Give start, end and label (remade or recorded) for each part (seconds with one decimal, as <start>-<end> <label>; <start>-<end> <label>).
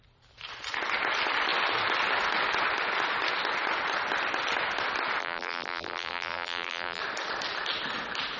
0.0-5.2 recorded; 5.2-7.0 remade; 7.0-8.4 recorded